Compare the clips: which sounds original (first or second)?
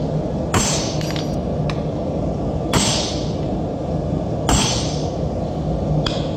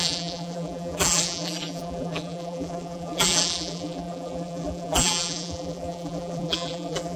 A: first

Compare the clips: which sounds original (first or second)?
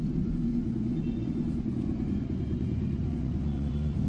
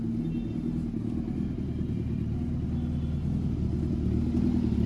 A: second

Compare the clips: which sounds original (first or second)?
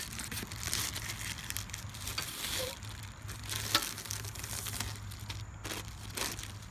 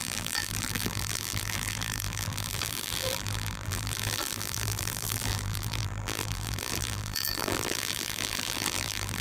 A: first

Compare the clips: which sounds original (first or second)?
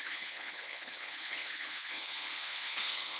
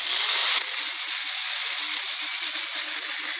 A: second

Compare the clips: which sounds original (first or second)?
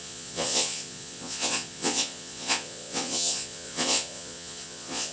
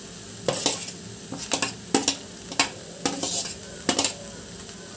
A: second